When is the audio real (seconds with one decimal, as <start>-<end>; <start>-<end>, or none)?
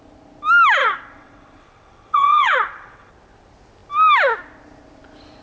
0.0-0.8; 3.1-5.4